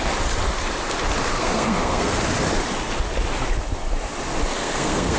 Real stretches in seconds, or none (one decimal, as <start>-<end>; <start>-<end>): 0.0-1.3; 2.2-4.6